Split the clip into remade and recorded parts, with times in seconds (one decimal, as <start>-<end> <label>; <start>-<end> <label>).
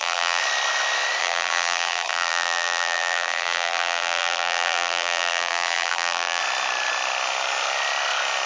0.0-0.4 remade; 0.4-1.2 recorded; 1.2-6.4 remade; 6.4-8.5 recorded